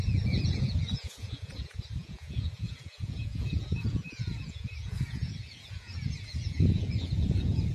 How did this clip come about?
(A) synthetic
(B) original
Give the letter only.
A